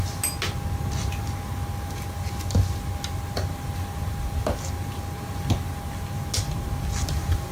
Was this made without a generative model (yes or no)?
yes